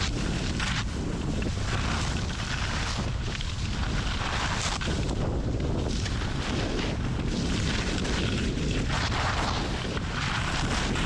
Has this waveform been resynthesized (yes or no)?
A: no